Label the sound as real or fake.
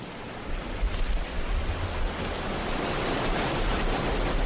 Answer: real